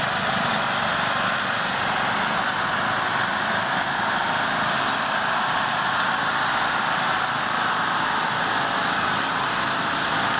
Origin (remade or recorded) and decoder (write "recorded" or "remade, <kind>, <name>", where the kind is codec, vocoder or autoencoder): recorded